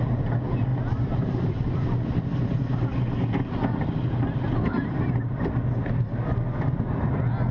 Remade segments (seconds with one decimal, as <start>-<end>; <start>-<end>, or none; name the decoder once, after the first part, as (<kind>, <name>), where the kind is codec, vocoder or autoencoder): 0.0-2.9 (vocoder, BigVGAN v2); 4.4-7.5